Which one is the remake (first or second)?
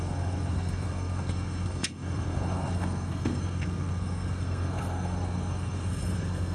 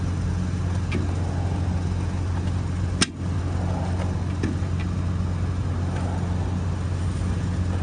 first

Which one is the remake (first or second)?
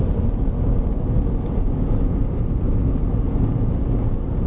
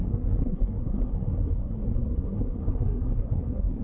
second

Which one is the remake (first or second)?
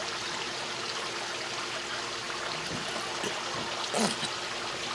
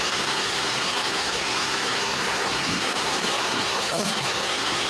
second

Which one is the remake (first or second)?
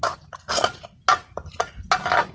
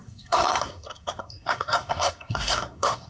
second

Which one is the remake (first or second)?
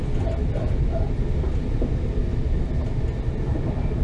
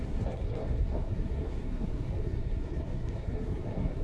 second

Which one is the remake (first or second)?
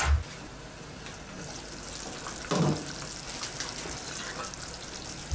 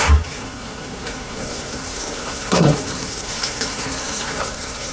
second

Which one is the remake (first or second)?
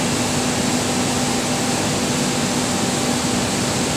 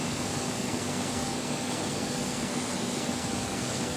second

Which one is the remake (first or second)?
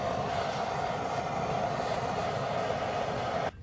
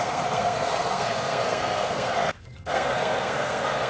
second